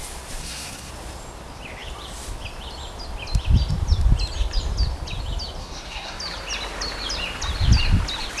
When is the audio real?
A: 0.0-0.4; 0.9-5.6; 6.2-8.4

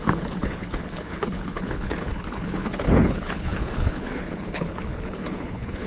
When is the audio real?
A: none

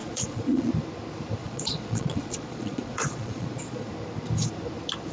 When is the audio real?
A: 0.7-1.4; 3.9-5.1